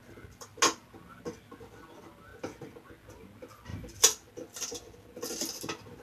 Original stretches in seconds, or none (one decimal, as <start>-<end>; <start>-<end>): 0.0-6.0